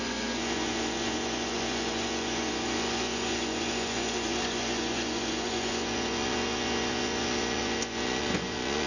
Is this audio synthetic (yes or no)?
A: yes